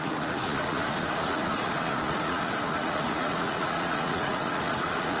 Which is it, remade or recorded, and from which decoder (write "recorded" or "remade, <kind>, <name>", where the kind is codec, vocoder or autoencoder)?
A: remade, vocoder, Vocos